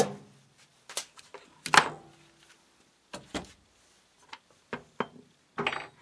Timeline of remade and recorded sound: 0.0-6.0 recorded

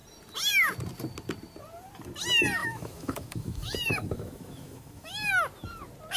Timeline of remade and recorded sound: 0.0-2.6 recorded; 2.6-5.3 remade; 5.3-6.2 recorded

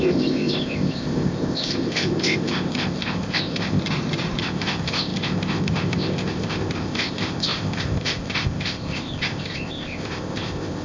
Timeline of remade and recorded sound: 0.0-3.8 remade; 3.8-4.4 recorded; 4.4-10.8 remade